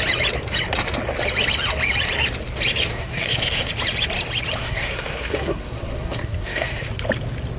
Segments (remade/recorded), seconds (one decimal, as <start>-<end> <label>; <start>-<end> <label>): 0.0-2.9 recorded; 2.9-3.7 remade; 3.7-4.6 recorded; 4.6-6.9 remade; 6.9-7.6 recorded